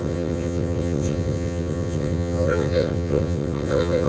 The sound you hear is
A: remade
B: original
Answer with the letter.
A